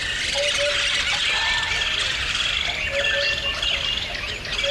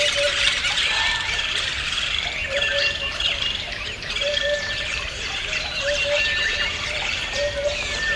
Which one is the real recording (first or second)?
first